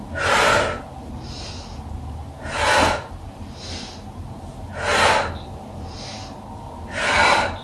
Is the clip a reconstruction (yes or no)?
no